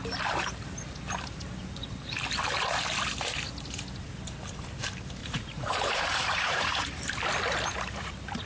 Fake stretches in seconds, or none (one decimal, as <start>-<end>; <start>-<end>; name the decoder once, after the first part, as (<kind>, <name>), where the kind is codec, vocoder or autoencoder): 5.2-6.9 (vocoder, Vocos)